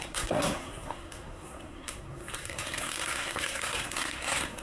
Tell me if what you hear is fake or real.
fake